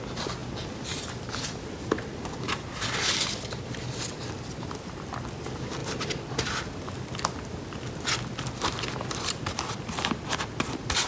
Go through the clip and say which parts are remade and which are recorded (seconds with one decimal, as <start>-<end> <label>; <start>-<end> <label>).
0.0-11.1 recorded